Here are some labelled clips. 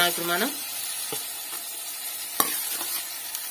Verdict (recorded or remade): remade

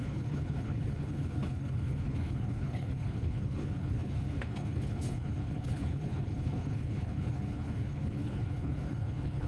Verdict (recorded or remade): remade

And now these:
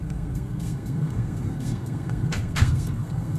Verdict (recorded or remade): remade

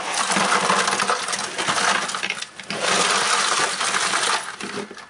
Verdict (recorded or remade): recorded